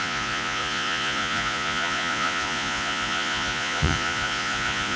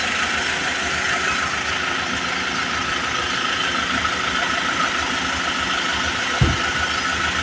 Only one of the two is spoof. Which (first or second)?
first